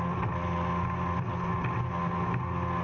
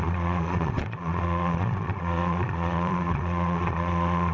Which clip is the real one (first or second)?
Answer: first